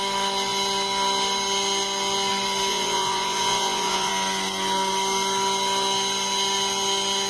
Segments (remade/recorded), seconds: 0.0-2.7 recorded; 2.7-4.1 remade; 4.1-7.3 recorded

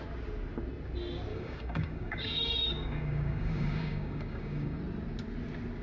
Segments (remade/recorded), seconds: 0.0-1.3 recorded; 1.3-4.8 remade; 4.8-5.8 recorded

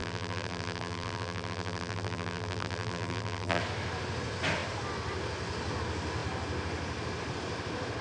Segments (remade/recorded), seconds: 0.0-3.6 remade; 3.6-8.0 recorded